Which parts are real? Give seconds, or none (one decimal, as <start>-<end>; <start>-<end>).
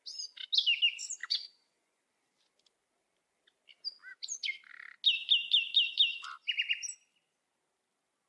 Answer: 0.0-1.2; 2.0-8.3